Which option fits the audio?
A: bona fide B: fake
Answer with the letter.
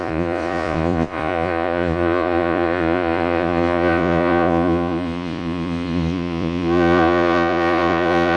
B